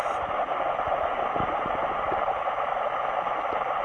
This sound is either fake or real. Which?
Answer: real